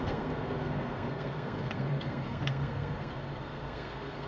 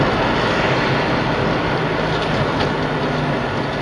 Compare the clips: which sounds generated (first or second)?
first